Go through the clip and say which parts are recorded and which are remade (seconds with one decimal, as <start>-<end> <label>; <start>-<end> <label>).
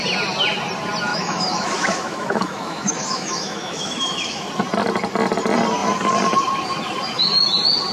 0.0-1.1 recorded; 1.1-4.5 remade; 4.5-7.9 recorded